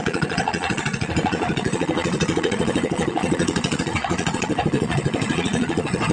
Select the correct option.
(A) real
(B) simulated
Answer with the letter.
B